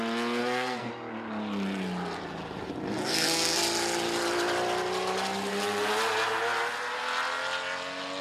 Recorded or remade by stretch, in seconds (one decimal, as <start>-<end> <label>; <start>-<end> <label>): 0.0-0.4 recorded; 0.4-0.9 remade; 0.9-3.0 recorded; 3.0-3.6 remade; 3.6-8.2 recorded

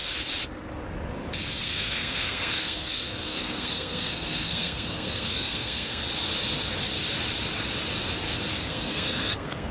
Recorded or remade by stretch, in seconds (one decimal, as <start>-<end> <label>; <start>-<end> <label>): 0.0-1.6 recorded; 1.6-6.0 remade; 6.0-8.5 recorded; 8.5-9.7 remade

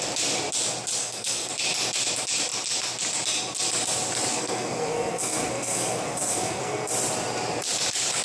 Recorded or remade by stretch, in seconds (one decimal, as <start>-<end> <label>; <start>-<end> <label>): 0.0-1.0 recorded; 1.0-1.5 remade; 1.5-4.3 recorded; 4.3-6.9 remade; 6.9-8.2 recorded

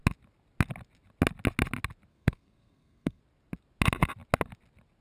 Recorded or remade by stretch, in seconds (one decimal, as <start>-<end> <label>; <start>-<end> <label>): 0.0-2.1 recorded; 2.1-3.2 remade; 3.2-5.0 recorded

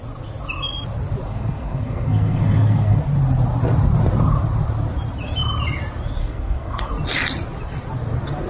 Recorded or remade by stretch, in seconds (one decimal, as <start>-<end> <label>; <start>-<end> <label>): 0.0-1.3 recorded; 1.3-3.0 remade; 3.0-6.2 recorded; 6.2-6.9 remade; 6.9-8.5 recorded